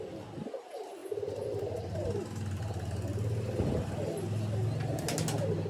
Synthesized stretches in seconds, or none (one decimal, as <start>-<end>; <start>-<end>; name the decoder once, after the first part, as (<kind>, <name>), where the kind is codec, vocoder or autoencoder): none